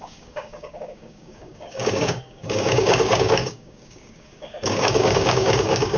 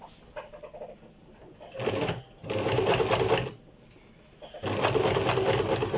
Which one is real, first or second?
second